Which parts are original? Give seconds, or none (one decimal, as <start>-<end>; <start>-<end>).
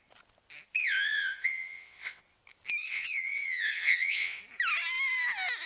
0.0-0.8; 2.2-2.8; 4.4-5.7